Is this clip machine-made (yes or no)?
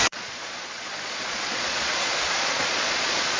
yes